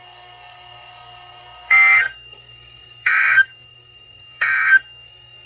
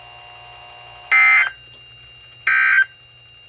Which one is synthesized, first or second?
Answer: first